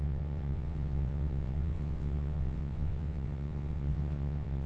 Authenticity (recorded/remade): remade